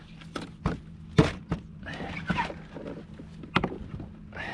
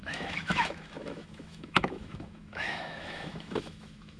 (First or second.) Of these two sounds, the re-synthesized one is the second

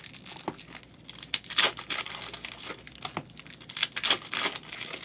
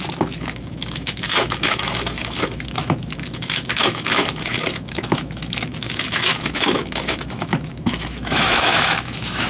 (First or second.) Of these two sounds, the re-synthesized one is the second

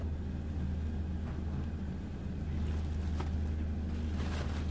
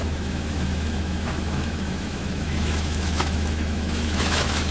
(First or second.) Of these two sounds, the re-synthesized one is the second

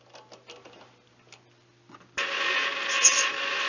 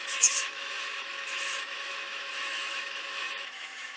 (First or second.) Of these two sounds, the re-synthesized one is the second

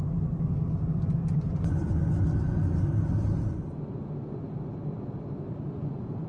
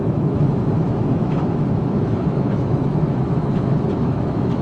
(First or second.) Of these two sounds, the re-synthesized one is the second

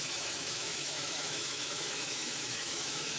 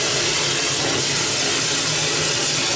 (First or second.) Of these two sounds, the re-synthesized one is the first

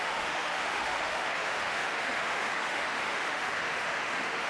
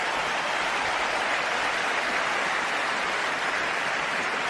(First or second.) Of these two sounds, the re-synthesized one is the first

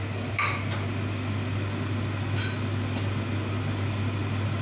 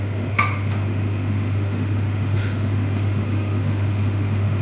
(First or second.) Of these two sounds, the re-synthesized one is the second